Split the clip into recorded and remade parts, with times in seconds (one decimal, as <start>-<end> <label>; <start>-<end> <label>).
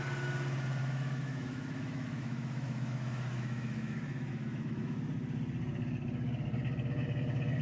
0.0-0.8 recorded; 0.8-5.0 remade; 5.0-7.6 recorded